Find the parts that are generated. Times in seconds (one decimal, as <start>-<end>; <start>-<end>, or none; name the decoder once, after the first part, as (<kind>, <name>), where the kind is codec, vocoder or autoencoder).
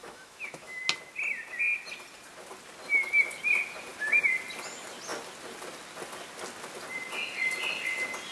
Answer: 0.0-0.8 (autoencoder, DAC-VAE)